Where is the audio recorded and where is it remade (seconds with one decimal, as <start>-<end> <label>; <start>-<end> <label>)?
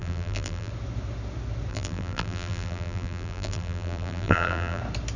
0.0-0.7 remade; 0.7-1.7 recorded; 1.7-4.8 remade; 4.8-5.2 recorded